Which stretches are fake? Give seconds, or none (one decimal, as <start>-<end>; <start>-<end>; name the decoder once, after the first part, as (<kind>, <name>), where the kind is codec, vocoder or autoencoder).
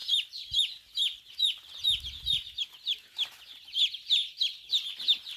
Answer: 0.0-2.9 (vocoder, BigVGAN v2); 3.4-5.4